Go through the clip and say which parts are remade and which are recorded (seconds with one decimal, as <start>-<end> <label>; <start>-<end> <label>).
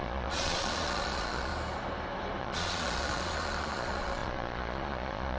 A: 0.0-1.5 remade; 1.5-2.4 recorded; 2.4-5.4 remade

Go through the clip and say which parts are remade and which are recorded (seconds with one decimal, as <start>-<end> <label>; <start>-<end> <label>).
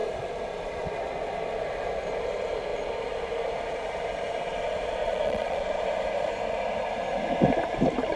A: 0.0-5.0 recorded; 5.0-5.8 remade; 5.8-8.2 recorded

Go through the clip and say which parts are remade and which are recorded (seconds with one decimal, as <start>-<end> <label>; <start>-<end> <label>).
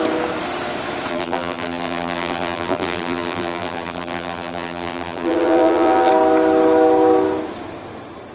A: 0.0-1.1 recorded; 1.1-6.1 remade; 6.1-8.3 recorded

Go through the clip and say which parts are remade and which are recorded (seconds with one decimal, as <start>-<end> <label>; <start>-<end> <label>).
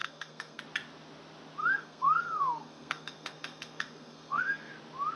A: 0.0-0.6 remade; 0.6-1.6 recorded; 1.6-4.7 remade; 4.7-5.2 recorded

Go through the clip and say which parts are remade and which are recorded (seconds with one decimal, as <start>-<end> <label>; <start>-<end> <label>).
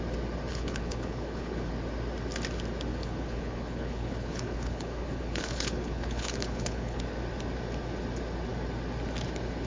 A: 0.0-0.5 recorded; 0.5-1.7 remade; 1.7-2.9 recorded; 2.9-7.0 remade; 7.0-9.7 recorded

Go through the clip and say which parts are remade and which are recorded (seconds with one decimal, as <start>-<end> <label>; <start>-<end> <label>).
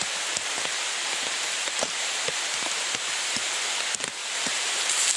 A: 0.0-1.6 recorded; 1.6-3.8 remade; 3.8-4.2 recorded; 4.2-5.2 remade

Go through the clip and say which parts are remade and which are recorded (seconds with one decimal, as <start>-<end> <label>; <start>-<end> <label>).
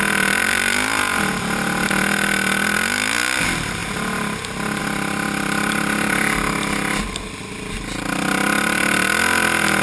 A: 0.0-9.8 recorded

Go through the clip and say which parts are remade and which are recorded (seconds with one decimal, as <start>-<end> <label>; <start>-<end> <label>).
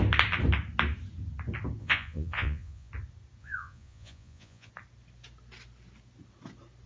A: 0.0-1.8 recorded; 1.8-2.9 remade; 2.9-3.4 recorded; 3.4-4.7 remade; 4.7-6.9 recorded